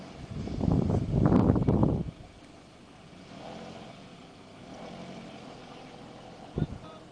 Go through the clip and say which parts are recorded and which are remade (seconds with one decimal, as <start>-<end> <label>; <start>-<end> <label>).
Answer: 0.0-7.1 recorded